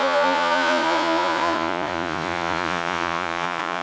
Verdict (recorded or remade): remade